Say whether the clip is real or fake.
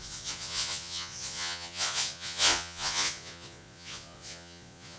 fake